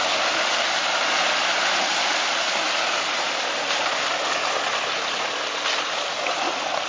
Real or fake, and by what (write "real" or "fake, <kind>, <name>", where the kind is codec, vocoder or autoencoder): real